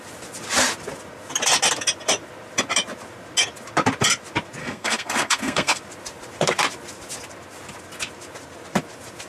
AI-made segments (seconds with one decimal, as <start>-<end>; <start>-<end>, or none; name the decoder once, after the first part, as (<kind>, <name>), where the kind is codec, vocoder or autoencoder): 4.6-5.8 (codec, SNAC)